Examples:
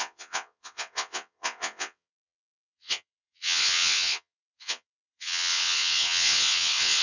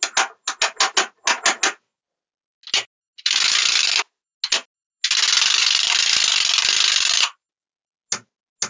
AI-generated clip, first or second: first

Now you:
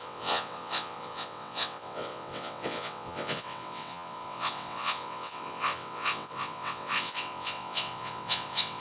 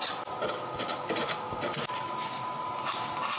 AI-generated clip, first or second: first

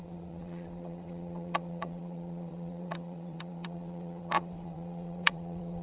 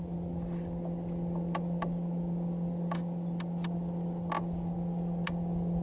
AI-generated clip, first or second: first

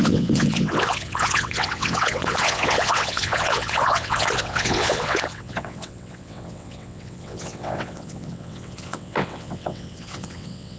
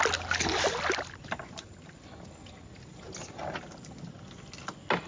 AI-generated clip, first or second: first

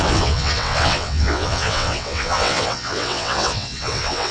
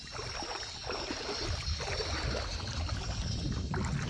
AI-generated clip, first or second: first